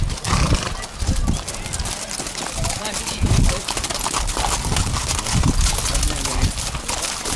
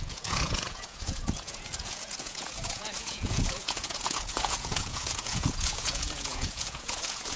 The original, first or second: first